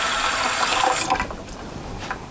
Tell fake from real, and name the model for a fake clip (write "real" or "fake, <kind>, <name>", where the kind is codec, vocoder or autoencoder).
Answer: real